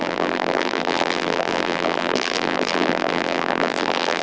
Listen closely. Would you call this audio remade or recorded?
remade